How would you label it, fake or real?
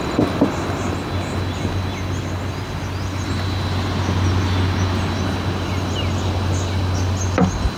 real